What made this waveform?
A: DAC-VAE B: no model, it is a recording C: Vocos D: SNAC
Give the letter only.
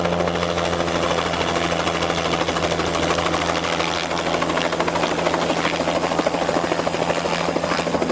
B